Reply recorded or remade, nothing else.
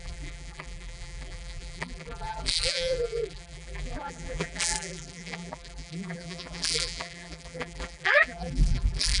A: remade